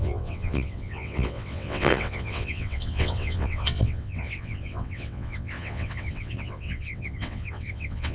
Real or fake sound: fake